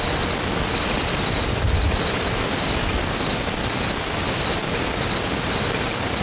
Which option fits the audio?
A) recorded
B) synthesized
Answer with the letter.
A